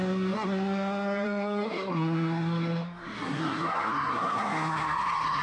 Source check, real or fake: fake